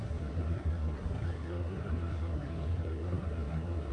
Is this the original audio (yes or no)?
no